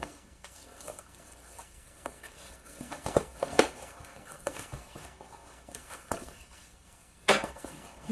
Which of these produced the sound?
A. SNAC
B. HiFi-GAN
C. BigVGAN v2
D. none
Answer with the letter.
A